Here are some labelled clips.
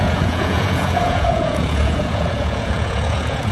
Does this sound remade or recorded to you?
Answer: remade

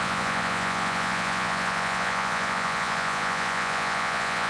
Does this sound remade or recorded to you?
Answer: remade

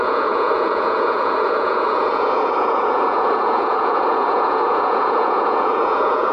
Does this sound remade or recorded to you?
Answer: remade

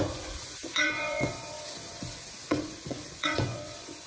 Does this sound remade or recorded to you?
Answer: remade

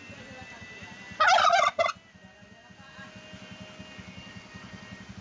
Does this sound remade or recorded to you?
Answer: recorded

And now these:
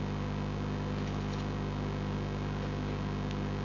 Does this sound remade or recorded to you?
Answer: recorded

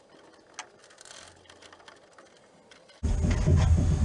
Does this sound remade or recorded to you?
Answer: recorded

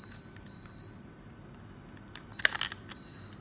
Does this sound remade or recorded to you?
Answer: recorded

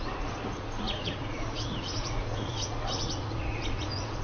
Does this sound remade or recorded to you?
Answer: remade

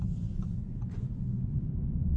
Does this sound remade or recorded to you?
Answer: remade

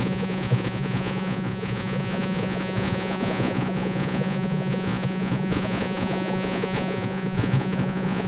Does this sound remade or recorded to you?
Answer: remade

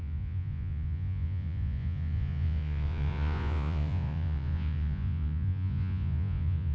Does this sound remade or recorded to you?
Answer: remade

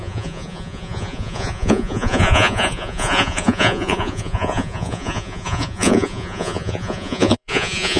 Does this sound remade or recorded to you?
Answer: remade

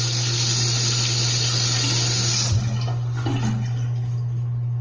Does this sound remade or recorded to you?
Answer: recorded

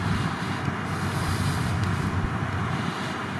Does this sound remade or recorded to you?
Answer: recorded